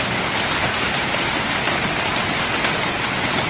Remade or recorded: recorded